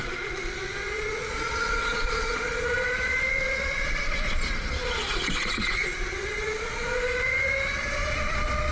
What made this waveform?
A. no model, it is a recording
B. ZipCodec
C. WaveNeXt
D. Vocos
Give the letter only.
D